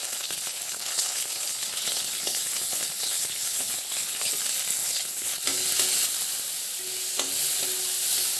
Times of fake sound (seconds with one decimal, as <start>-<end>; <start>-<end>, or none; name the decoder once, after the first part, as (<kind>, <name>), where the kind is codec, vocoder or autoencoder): 0.0-4.3 (codec, HILCodec); 4.8-5.4